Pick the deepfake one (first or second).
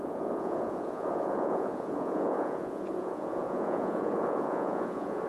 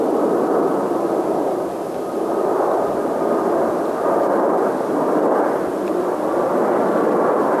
first